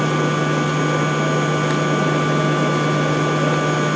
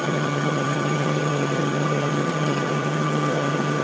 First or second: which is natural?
first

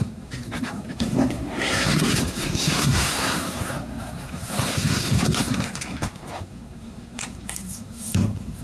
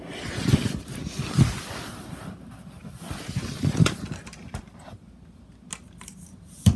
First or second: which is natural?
second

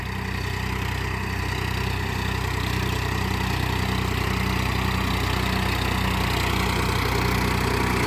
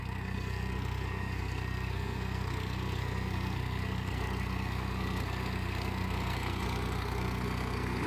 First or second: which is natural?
first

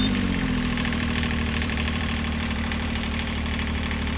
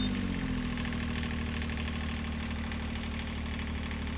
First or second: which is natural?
second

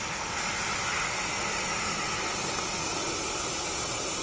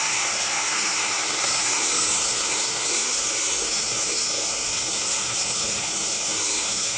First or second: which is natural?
first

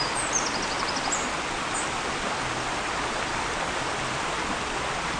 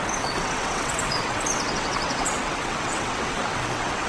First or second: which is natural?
first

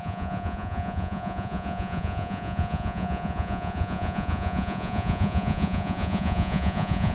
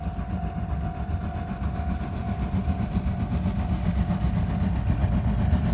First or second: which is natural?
second